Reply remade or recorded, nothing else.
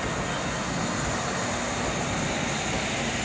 recorded